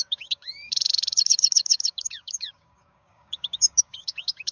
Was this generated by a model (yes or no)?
yes